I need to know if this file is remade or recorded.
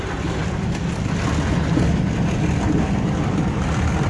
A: recorded